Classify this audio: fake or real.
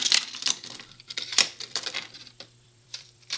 fake